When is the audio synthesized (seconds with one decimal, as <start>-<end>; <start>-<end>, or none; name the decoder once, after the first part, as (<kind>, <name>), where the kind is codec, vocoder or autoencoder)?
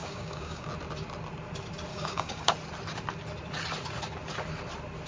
0.0-0.7 (codec, DAC); 1.9-2.5